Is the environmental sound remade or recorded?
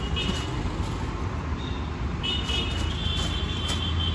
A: recorded